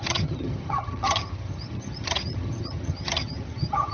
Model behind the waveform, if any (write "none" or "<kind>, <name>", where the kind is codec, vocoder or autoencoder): vocoder, HiFi-GAN